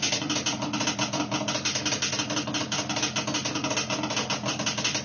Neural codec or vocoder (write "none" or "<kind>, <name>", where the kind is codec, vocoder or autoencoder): none